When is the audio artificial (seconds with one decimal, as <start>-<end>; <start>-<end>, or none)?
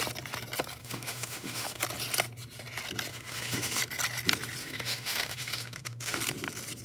0.8-1.8; 3.1-3.8; 4.6-6.2